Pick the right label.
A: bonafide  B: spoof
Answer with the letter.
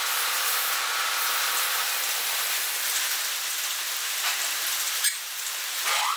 A